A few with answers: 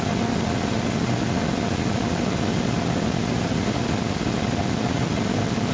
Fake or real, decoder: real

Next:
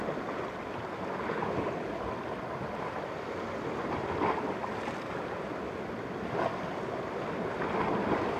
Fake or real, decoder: real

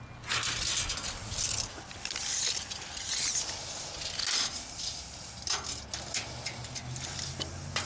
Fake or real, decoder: real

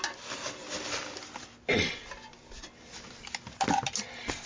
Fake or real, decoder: real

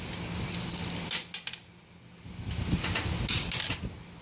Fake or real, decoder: real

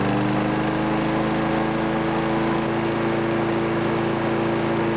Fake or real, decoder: real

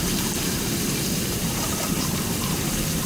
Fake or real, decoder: fake, vocoder, BigVGAN v2